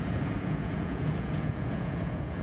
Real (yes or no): no